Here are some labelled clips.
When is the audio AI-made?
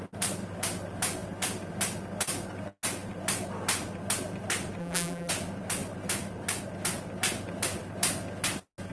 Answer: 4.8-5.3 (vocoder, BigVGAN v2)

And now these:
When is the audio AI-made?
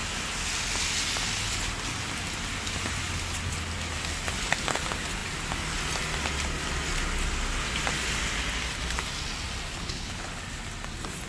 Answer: 9.7-10.4 (codec, HILCodec)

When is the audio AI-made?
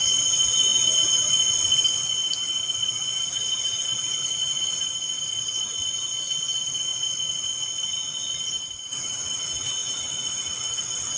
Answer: none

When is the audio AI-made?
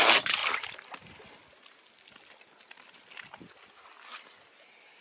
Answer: none